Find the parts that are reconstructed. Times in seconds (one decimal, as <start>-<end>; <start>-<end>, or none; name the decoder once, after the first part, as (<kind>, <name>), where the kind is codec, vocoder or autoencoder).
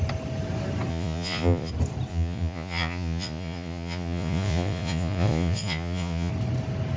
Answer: 0.9-1.7 (vocoder, Vocos); 2.1-6.3